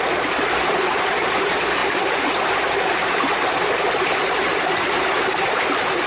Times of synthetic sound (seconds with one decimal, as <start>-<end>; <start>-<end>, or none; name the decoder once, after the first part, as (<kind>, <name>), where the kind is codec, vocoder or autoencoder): 0.0-1.8 (vocoder, BigVGAN v2); 2.8-6.1